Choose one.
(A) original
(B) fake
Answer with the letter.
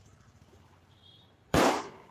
B